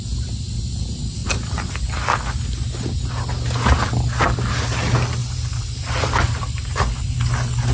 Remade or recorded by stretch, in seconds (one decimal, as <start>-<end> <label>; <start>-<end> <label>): 0.0-1.2 recorded; 1.2-1.7 remade; 1.7-5.2 recorded; 5.2-6.8 remade; 6.8-7.7 recorded